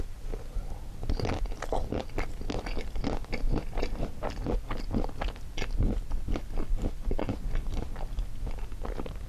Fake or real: real